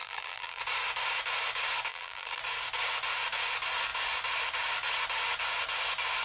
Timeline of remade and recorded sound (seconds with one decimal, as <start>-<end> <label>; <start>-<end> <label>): 0.0-0.6 remade; 0.6-1.9 recorded; 1.9-2.4 remade; 2.4-6.2 recorded

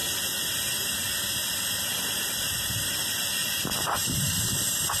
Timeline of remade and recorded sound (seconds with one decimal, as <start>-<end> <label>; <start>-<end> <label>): 0.0-2.9 recorded; 2.9-5.0 remade

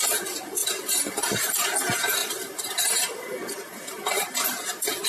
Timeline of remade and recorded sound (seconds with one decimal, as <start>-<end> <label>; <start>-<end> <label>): 0.0-0.6 recorded; 0.6-1.5 remade; 1.5-2.2 recorded; 2.2-5.1 remade

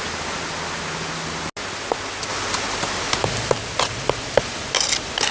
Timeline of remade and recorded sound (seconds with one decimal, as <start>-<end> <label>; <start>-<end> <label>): 0.0-2.3 recorded; 2.3-3.5 remade; 3.5-5.3 recorded

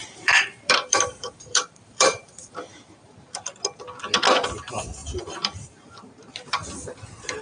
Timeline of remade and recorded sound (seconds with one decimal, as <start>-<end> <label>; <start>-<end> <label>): 0.0-3.5 remade; 3.5-5.0 recorded; 5.0-7.0 remade; 7.0-7.4 recorded